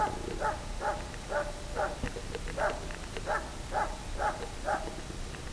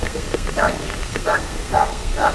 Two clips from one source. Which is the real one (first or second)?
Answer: first